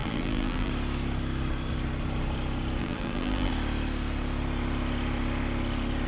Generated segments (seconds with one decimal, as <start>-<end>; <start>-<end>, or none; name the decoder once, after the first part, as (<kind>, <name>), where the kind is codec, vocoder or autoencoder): 0.0-0.7 (vocoder, BigVGAN v2); 2.8-3.5